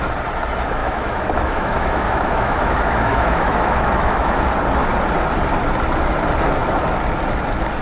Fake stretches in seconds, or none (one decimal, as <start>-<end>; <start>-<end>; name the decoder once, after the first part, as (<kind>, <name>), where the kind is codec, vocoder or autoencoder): 0.8-4.4 (autoencoder, DAC-VAE)